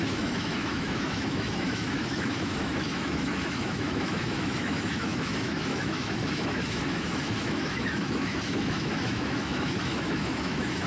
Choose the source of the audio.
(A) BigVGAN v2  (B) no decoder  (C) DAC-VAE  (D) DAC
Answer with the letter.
C